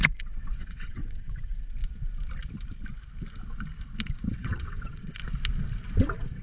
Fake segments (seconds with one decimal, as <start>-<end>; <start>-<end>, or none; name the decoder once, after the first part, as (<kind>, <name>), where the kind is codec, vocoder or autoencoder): 0.0-1.8 (vocoder, WaveNeXt); 4.3-5.2; 6.0-6.4